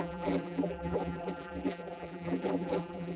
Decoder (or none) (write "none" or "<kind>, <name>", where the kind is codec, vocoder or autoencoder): vocoder, BigVGAN v2